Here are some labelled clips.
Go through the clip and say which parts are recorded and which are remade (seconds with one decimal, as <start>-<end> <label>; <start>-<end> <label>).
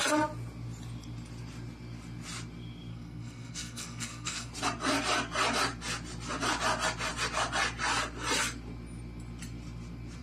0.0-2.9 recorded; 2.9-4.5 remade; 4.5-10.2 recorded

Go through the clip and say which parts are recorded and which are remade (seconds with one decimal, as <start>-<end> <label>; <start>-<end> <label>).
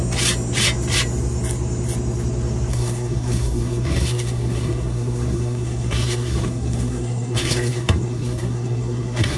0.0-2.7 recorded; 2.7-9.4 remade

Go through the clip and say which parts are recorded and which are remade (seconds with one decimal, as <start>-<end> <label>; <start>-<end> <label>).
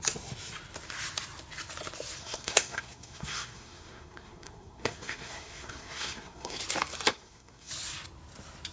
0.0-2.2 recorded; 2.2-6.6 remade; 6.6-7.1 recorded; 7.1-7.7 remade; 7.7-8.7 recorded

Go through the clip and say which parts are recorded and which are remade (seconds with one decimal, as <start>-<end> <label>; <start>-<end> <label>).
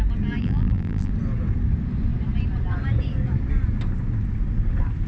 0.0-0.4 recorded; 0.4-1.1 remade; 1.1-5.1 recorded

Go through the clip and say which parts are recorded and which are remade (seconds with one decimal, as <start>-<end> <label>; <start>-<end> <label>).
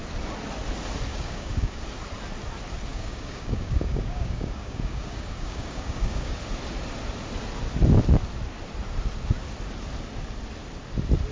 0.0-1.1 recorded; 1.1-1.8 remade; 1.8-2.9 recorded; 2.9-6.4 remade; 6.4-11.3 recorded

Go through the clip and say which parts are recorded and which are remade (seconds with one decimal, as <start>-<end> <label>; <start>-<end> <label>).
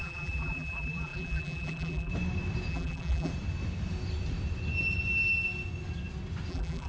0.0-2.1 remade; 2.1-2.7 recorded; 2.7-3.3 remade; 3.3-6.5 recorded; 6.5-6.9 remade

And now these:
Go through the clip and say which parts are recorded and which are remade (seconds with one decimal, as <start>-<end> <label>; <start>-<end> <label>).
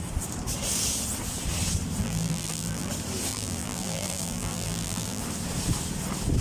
0.0-2.0 recorded; 2.0-2.9 remade; 2.9-3.3 recorded; 3.3-5.2 remade; 5.2-6.4 recorded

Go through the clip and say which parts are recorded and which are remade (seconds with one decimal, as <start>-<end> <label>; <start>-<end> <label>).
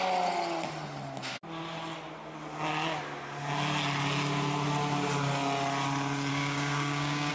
0.0-6.3 recorded; 6.3-7.3 remade